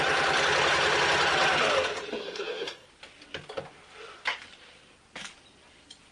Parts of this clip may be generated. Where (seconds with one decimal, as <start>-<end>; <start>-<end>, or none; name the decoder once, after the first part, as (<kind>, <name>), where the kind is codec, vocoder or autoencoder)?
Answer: 2.2-2.9 (codec, SNAC)

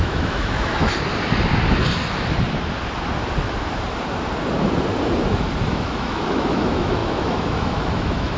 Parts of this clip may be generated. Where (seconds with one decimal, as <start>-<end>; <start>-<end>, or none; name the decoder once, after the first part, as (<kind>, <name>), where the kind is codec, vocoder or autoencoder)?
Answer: 0.0-0.9 (autoencoder, DAC-VAE); 5.7-8.4

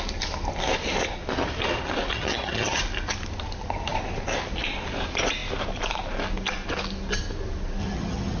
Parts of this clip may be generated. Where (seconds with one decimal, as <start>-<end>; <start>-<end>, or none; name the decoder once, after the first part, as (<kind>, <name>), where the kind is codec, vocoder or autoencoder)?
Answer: 2.1-2.8 (vocoder, HiFi-GAN); 7.8-8.4

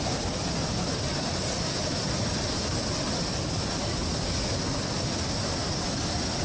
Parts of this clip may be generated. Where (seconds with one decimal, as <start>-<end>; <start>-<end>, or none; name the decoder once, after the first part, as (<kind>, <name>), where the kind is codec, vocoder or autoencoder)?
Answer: 1.1-1.7 (vocoder, BigVGAN v2)

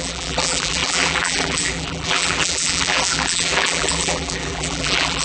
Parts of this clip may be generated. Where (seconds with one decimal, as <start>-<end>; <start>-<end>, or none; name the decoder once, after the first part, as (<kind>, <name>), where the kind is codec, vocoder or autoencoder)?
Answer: 0.0-5.2 (vocoder, BigVGAN v2)

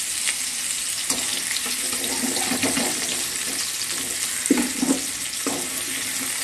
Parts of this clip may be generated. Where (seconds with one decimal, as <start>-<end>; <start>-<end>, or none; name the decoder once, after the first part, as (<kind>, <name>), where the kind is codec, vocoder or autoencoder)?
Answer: none

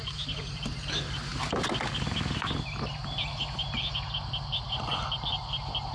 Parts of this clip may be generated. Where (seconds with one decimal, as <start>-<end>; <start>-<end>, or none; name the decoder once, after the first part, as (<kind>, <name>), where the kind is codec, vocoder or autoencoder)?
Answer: none

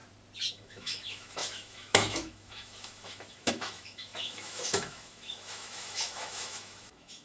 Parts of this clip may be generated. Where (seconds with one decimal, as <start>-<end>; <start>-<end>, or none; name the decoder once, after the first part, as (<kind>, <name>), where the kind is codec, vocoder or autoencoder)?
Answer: 0.5-7.2 (autoencoder, DAC-VAE)